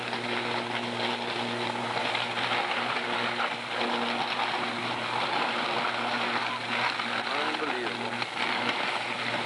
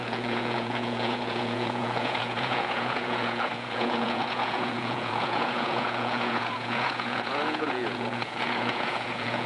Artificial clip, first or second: second